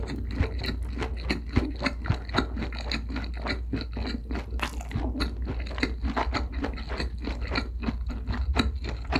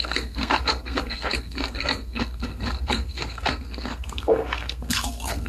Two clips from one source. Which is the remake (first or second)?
second